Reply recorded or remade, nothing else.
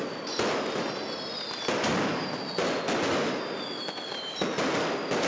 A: recorded